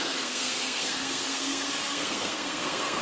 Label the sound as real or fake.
fake